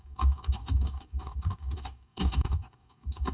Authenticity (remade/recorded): remade